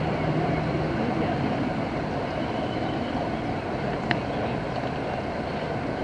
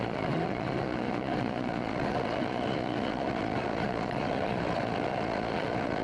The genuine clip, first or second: first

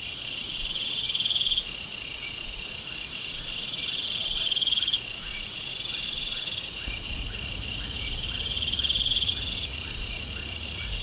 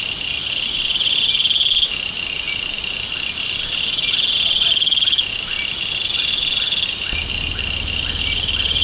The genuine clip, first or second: second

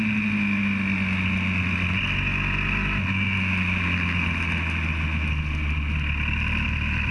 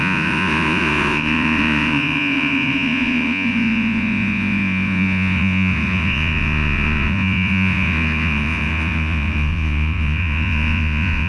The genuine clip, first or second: first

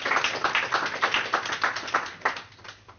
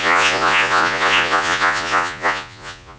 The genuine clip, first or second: first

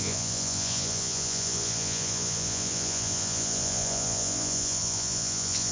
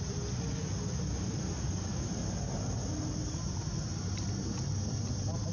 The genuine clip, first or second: second